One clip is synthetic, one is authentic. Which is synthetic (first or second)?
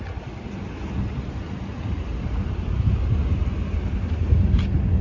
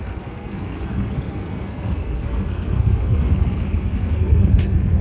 second